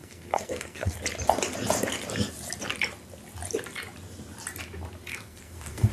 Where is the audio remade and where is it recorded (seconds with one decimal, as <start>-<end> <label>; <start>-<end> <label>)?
0.0-1.0 remade; 1.0-5.1 recorded; 5.1-5.9 remade